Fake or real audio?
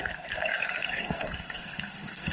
fake